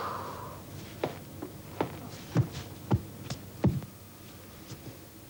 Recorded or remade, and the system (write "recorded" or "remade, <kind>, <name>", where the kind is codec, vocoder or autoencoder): recorded